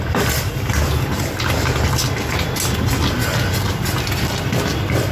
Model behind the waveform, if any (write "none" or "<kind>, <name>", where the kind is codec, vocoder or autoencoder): none